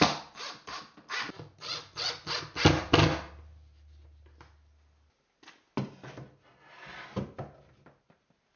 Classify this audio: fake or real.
real